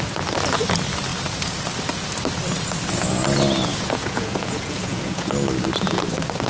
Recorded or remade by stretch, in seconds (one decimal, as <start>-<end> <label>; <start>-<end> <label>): 0.0-3.7 recorded; 3.7-5.3 remade; 5.3-6.5 recorded